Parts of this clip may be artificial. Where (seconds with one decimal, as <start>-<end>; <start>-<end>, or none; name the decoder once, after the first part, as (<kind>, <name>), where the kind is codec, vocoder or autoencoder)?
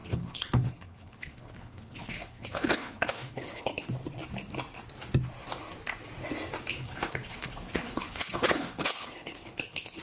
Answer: 0.0-3.9 (codec, HILCodec); 6.7-10.0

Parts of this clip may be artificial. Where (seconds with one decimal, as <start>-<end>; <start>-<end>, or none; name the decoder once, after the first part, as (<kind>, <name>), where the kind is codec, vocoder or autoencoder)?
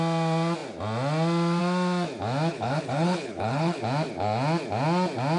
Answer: 2.5-3.8 (codec, HILCodec)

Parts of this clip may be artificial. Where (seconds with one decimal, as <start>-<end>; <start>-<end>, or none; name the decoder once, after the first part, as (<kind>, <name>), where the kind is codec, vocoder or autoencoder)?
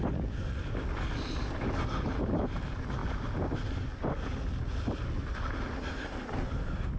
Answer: none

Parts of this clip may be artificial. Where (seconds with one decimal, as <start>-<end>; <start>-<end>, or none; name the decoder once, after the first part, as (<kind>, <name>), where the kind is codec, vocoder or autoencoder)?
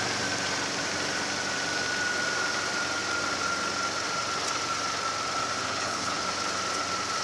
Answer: 5.6-6.2 (codec, HILCodec)